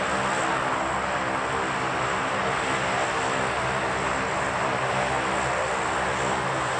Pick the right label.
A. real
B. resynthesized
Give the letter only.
A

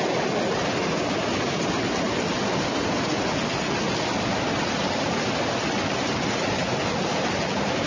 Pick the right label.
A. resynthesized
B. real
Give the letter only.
B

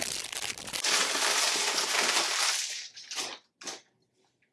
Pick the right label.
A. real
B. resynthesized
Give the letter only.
A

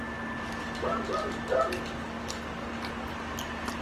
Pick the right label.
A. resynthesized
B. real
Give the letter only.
B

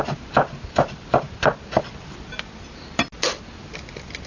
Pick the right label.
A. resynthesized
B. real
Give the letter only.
B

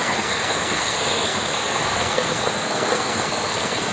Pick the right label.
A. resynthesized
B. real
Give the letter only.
A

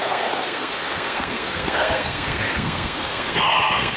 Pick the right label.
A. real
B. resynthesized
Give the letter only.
B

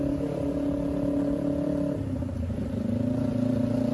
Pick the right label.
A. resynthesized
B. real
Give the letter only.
B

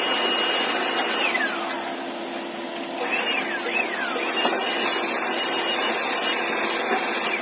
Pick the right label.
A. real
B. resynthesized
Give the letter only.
A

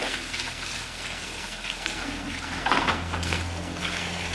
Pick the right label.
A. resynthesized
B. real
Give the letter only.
A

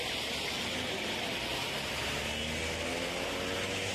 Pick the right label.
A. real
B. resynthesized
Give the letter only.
A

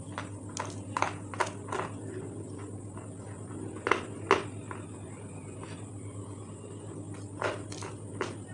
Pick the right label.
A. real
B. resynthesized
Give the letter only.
A